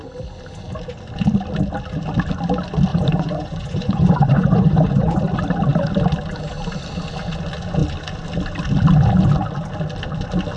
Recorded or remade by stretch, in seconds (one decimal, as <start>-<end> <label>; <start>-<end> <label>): 0.0-2.9 recorded; 2.9-5.2 remade; 5.2-10.6 recorded

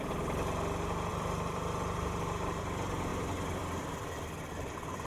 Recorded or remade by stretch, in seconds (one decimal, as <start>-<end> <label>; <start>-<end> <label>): 0.0-1.1 recorded; 1.1-2.6 remade; 2.6-3.1 recorded; 3.1-3.8 remade; 3.8-5.1 recorded

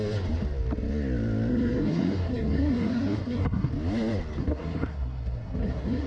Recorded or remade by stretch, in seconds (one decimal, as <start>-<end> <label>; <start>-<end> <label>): 0.0-1.5 recorded; 1.5-3.7 remade; 3.7-4.4 recorded; 4.4-6.1 remade

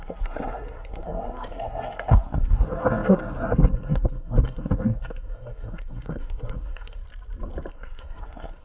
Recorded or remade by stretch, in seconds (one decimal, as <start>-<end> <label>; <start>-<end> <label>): 0.0-7.0 remade; 7.0-7.7 recorded; 7.7-8.6 remade

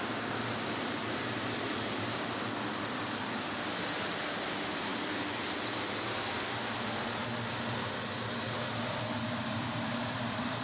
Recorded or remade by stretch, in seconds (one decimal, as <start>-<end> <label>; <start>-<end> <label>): 0.0-1.0 remade; 1.0-4.5 recorded; 4.5-4.9 remade; 4.9-9.4 recorded; 9.4-10.6 remade

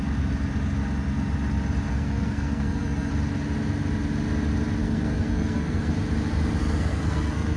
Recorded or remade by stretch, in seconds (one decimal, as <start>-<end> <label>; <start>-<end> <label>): 0.0-1.9 recorded; 1.9-3.1 remade; 3.1-4.8 recorded; 4.8-5.9 remade; 5.9-6.6 recorded; 6.6-7.6 remade

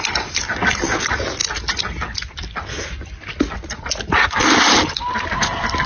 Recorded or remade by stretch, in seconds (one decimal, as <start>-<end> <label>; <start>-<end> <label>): 0.0-5.9 recorded